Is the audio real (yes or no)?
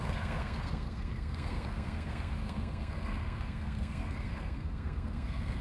no